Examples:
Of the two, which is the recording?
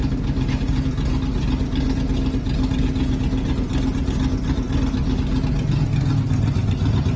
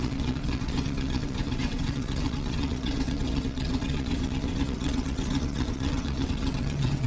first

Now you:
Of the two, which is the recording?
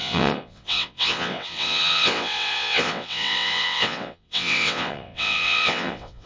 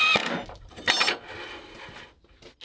second